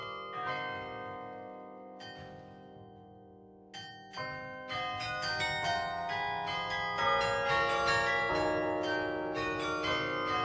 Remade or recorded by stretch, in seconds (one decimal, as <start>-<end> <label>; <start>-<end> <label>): 0.0-10.4 recorded